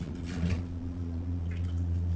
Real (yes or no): no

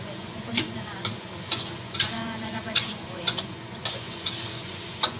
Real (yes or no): no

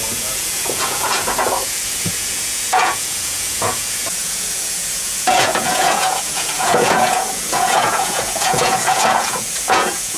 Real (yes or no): no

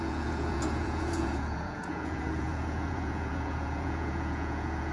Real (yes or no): no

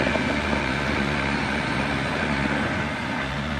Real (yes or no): no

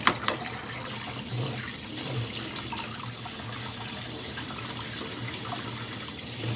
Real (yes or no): yes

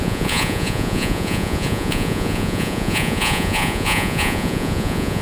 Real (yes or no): no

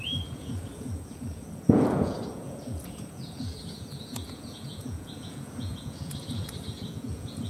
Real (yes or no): no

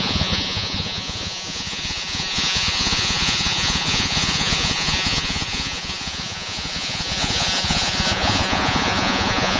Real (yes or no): no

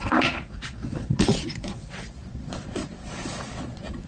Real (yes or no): no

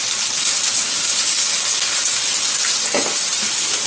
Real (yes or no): yes